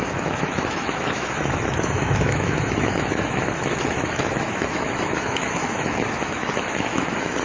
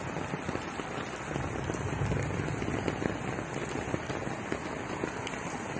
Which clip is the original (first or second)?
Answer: second